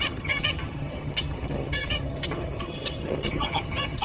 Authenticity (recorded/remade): remade